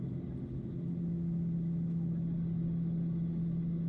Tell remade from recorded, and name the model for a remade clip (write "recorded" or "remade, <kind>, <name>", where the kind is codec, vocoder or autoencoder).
recorded